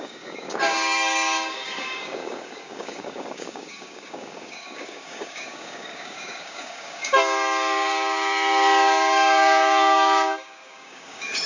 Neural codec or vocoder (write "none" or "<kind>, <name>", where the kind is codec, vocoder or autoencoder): codec, DAC